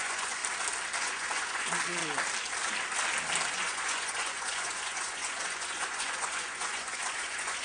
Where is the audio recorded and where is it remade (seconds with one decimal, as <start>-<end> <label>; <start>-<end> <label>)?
0.0-0.4 remade; 0.4-1.0 recorded; 1.0-2.0 remade; 2.0-3.5 recorded; 3.5-7.6 remade